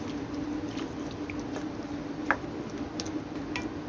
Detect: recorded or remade recorded